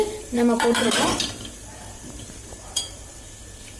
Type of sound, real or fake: fake